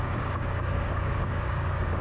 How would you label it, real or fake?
fake